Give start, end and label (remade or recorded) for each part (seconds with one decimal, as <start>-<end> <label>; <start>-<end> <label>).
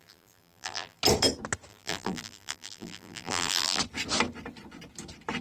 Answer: 0.0-1.0 remade; 1.0-1.7 recorded; 1.7-3.8 remade; 3.8-5.4 recorded